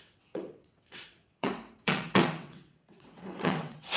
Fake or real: fake